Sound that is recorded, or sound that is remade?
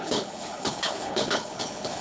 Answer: remade